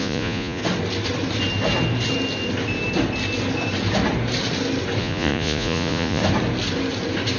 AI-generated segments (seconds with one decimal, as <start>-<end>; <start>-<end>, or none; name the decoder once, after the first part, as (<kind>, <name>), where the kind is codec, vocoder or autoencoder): 0.0-0.6 (vocoder, Vocos); 5.0-6.2